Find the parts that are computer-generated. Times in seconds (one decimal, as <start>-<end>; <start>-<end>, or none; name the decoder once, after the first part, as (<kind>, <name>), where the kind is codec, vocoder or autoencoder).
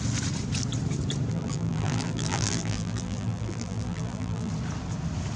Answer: 1.3-4.5 (vocoder, BigVGAN v2)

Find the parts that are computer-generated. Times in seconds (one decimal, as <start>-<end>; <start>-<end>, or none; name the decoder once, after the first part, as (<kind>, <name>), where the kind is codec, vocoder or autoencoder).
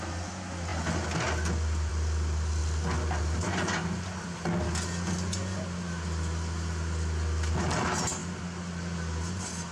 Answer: none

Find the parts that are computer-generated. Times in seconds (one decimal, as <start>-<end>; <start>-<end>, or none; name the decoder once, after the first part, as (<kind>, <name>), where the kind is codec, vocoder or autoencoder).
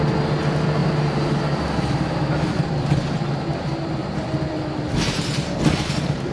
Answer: 0.8-1.3 (vocoder, BigVGAN v2); 4.0-5.4